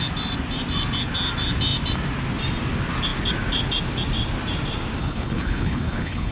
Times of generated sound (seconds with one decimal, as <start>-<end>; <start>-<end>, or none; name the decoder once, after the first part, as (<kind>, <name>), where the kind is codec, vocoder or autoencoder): 5.0-6.3 (codec, HILCodec)